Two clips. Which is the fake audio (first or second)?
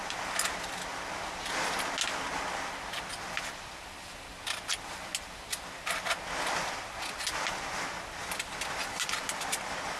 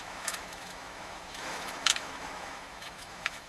second